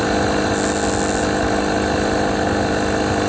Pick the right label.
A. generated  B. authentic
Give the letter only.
B